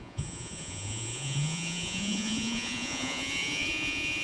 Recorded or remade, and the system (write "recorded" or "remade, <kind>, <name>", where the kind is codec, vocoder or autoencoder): remade, vocoder, Vocos